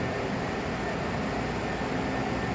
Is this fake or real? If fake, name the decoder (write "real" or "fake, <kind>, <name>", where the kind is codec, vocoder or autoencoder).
real